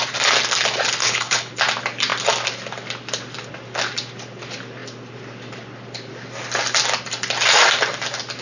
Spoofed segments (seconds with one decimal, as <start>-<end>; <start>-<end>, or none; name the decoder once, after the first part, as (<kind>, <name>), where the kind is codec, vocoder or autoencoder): 1.0-1.5 (codec, HILCodec)